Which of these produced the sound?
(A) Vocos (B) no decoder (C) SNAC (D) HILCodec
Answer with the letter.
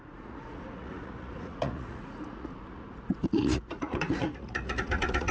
A